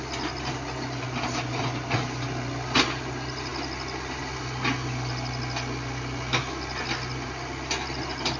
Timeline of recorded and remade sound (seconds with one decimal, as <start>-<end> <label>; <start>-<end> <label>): 0.0-8.4 recorded